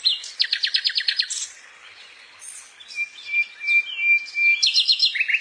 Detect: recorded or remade recorded